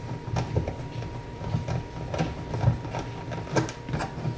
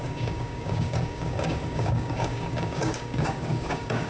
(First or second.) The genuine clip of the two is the first